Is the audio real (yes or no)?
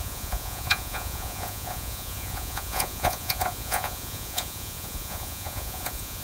no